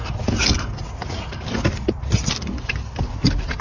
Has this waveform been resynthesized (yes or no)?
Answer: no